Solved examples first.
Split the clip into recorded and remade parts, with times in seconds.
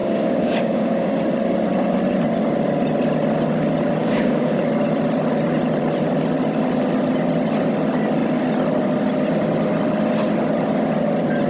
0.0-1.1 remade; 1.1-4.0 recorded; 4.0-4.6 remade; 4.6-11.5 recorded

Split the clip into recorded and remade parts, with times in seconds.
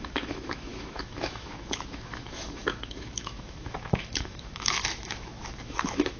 0.0-6.2 remade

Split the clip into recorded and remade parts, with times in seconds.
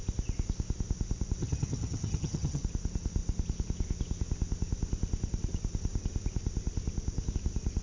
0.0-1.4 recorded; 1.4-2.6 remade; 2.6-7.8 recorded